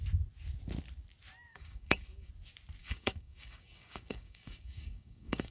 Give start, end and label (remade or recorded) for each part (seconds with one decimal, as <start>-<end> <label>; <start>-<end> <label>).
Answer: 0.0-1.5 recorded; 1.5-2.3 remade; 2.3-2.8 recorded; 2.8-5.5 remade